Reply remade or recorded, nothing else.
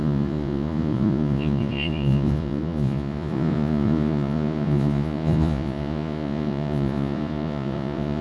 remade